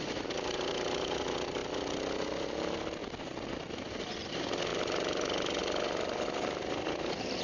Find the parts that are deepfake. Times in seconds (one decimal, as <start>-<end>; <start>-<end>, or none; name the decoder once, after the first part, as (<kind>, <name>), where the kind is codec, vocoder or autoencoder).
0.0-1.6 (vocoder, BigVGAN v2); 2.3-3.0; 3.9-4.7; 5.6-7.4